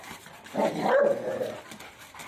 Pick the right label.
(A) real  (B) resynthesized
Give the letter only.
A